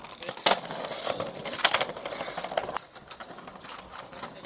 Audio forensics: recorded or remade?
recorded